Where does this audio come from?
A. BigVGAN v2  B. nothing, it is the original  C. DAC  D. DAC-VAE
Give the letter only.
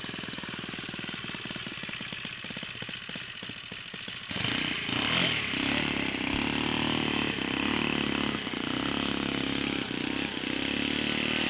B